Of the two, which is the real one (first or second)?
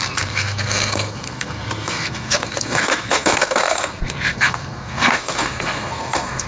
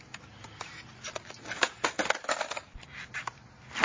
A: second